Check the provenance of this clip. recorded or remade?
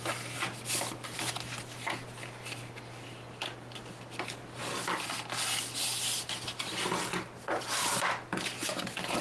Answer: recorded